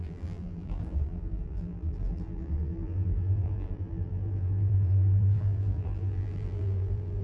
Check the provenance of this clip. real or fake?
fake